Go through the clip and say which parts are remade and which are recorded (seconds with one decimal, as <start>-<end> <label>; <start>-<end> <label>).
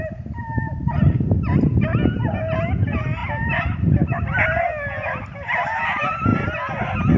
0.0-7.2 recorded